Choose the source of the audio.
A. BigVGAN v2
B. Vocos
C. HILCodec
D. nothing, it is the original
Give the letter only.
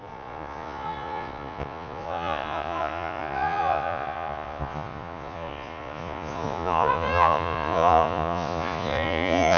B